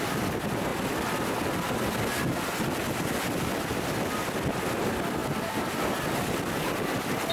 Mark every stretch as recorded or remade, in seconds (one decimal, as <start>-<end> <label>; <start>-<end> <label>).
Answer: 0.0-7.3 recorded